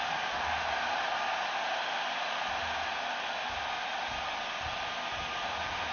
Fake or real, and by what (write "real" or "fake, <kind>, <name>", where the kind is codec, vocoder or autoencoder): real